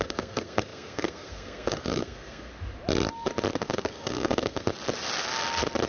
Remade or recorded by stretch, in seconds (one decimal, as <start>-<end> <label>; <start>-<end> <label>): 0.0-2.5 remade; 2.5-3.5 recorded; 3.5-4.7 remade; 4.7-5.9 recorded

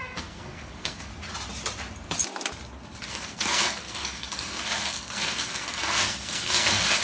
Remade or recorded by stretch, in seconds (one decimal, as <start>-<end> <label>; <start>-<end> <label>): 0.0-1.1 remade; 1.1-3.1 recorded; 3.1-7.0 remade

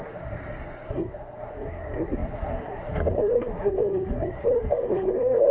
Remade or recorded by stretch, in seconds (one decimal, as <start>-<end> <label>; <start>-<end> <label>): 0.0-5.5 remade

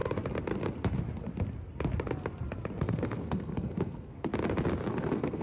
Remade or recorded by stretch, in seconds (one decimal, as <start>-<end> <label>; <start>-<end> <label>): 0.0-2.8 recorded; 2.8-4.3 remade; 4.3-4.9 recorded; 4.9-5.4 remade

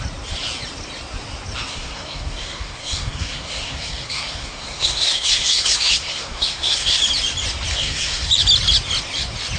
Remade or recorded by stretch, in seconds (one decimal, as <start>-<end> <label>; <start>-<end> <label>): 0.0-1.7 recorded; 1.7-7.0 remade; 7.0-7.7 recorded; 7.7-8.3 remade; 8.3-9.6 recorded

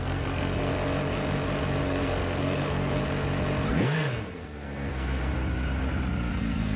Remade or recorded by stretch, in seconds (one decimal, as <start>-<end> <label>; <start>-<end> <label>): 0.0-0.7 remade; 0.7-1.8 recorded; 1.8-3.0 remade; 3.0-3.7 recorded; 3.7-5.3 remade; 5.3-6.3 recorded; 6.3-6.8 remade

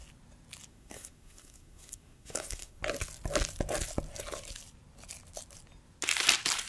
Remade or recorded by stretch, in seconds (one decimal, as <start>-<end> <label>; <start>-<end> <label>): 0.0-0.7 recorded; 0.7-2.8 remade; 2.8-6.7 recorded

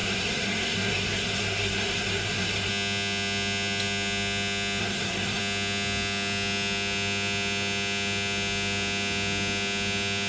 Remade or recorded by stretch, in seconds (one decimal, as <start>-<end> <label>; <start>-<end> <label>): 0.0-2.7 remade; 2.7-4.8 recorded; 4.8-5.4 remade; 5.4-10.3 recorded